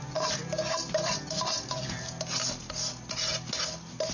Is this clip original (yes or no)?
yes